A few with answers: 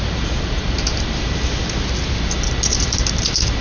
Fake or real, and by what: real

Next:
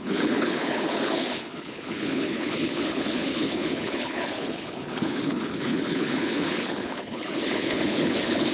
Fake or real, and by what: fake, codec, HILCodec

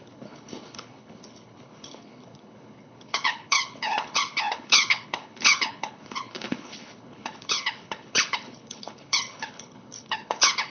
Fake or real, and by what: fake, codec, HILCodec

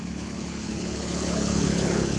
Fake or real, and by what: fake, codec, HILCodec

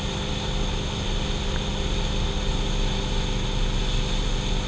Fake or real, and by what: real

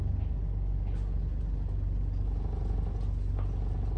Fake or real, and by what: real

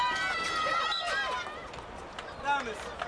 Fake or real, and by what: real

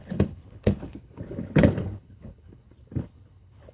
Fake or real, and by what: fake, codec, HILCodec